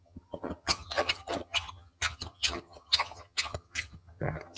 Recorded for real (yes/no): no